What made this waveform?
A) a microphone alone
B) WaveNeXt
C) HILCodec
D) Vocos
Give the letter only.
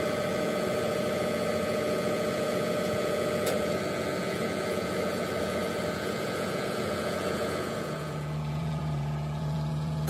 D